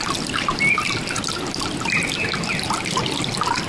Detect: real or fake real